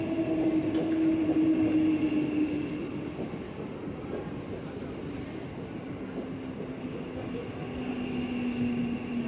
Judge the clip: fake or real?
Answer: real